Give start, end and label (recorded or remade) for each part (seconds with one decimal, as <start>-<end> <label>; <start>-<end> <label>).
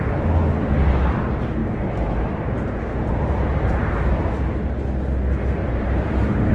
0.0-1.6 recorded; 1.6-4.1 remade; 4.1-5.6 recorded; 5.6-6.5 remade